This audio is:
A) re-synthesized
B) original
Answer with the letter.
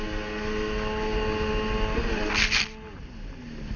B